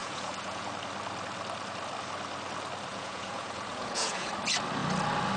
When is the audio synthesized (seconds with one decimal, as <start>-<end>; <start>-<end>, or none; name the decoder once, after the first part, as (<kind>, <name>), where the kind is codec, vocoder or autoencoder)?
0.0-0.7 (vocoder, Vocos); 2.9-4.3